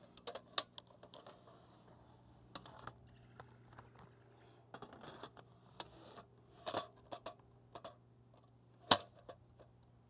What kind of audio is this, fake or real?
real